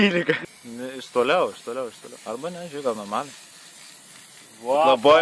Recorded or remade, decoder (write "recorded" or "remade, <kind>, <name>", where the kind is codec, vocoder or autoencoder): recorded